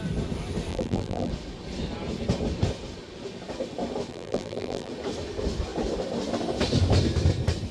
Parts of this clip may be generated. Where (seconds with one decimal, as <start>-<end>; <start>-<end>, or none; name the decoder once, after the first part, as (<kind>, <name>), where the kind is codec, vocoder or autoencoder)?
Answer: 0.7-1.3 (vocoder, BigVGAN v2); 4.1-4.9